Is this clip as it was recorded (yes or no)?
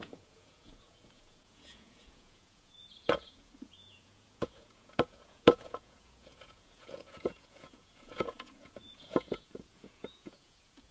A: no